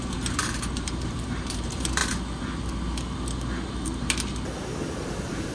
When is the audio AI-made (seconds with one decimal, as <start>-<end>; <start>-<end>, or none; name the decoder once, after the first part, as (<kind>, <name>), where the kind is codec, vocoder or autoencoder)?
0.0-2.0 (vocoder, BigVGAN v2); 5.1-5.5